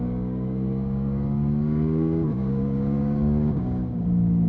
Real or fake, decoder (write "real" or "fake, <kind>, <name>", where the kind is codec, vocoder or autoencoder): fake, codec, DAC